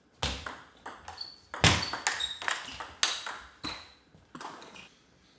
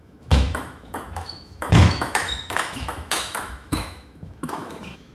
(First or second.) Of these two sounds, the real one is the first